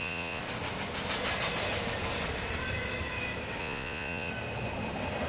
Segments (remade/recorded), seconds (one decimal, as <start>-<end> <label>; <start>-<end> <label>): 0.0-0.4 remade; 0.4-3.6 recorded; 3.6-4.3 remade; 4.3-5.3 recorded